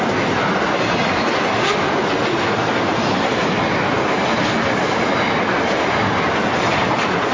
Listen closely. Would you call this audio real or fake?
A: real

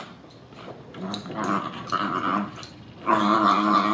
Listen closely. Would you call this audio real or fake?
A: real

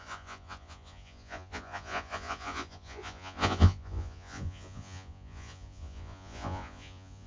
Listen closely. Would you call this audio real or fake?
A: fake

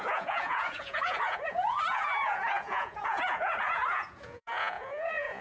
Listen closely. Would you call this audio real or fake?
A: fake